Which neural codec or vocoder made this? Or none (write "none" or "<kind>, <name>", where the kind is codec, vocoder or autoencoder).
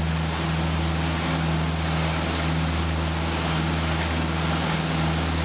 none